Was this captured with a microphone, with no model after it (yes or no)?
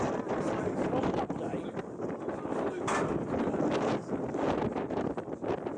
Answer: yes